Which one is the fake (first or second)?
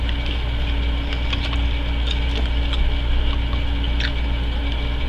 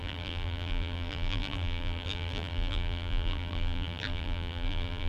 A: second